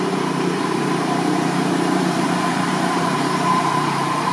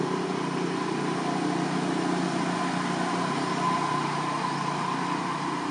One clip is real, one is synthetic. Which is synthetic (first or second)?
first